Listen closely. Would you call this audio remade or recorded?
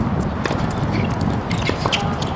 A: recorded